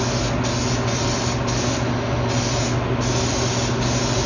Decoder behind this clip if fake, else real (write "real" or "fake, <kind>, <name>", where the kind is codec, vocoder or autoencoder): real